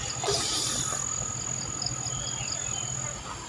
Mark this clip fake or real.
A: real